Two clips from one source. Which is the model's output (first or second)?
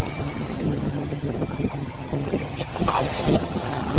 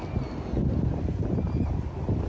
first